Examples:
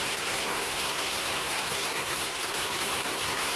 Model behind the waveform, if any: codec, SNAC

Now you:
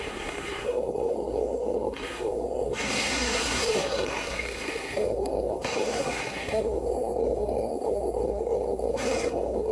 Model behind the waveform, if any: codec, SNAC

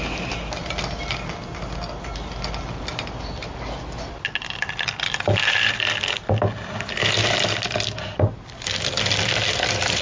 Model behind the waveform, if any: none